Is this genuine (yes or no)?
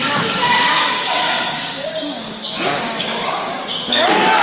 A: no